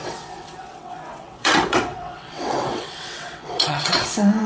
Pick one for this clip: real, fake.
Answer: fake